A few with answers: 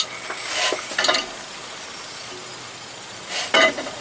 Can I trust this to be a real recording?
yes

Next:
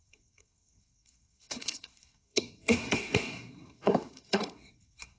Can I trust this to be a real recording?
no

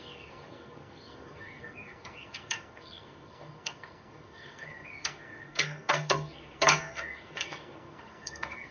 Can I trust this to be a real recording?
no